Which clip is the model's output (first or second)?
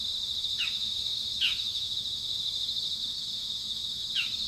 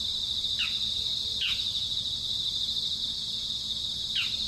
first